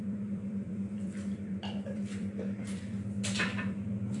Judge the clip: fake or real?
fake